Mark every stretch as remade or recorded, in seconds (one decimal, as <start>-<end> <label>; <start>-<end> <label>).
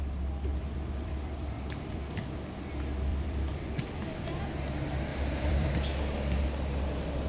0.0-0.5 recorded; 0.5-2.5 remade; 2.5-3.1 recorded; 3.1-4.0 remade; 4.0-5.1 recorded; 5.1-5.7 remade; 5.7-7.3 recorded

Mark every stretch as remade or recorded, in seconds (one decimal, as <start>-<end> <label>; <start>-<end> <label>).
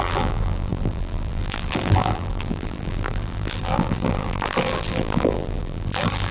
0.0-6.3 remade